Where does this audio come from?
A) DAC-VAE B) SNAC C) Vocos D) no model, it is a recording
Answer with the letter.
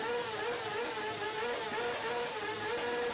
D